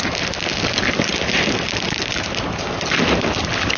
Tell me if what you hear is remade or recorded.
recorded